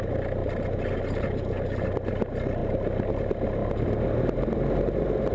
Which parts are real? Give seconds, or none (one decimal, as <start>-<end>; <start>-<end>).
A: 0.0-3.6